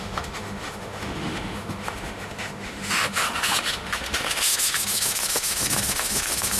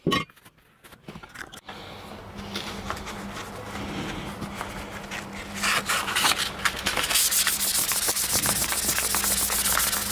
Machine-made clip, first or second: first